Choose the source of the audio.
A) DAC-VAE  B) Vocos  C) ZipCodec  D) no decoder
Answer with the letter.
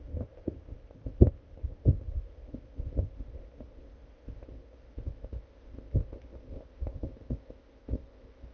C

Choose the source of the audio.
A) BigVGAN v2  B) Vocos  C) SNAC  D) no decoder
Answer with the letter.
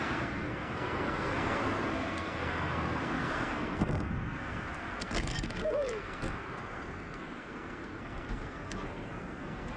C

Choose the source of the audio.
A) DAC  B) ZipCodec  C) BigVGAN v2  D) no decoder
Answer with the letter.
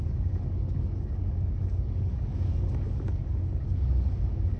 A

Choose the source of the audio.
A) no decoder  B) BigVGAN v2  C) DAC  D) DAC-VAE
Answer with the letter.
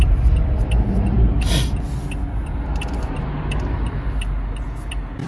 A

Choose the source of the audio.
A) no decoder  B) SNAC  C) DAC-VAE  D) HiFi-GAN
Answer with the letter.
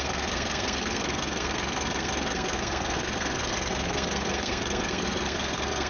B